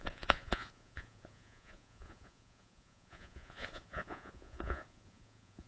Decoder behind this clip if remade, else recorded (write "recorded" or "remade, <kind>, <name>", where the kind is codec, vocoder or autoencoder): remade, vocoder, Vocos